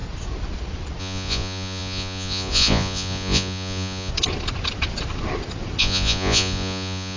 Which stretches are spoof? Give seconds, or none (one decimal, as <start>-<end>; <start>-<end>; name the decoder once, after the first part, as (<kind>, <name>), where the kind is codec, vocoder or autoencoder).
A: 1.0-4.1 (vocoder, Vocos); 5.8-7.2